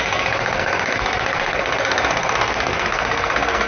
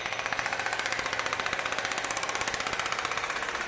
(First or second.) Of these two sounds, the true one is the second